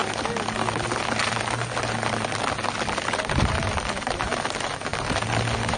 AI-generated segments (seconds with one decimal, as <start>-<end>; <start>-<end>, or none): none